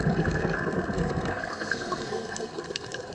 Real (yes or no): no